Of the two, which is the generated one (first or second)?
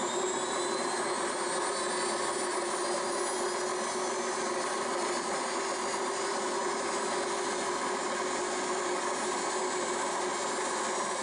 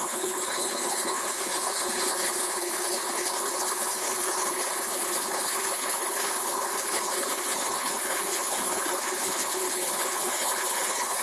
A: second